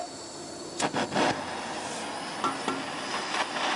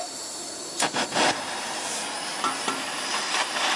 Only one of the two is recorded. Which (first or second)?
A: first